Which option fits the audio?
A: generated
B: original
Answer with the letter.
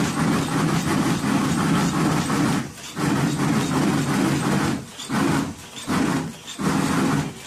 B